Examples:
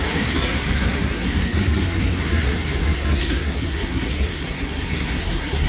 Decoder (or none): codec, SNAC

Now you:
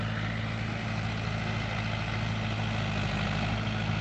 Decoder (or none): none